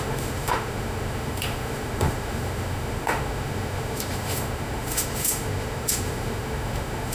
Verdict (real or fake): fake